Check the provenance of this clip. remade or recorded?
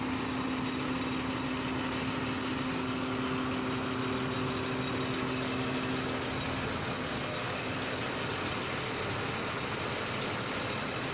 recorded